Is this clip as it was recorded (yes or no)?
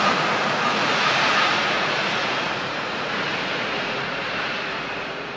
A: no